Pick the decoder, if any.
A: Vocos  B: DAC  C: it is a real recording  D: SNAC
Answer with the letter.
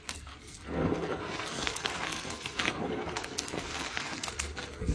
D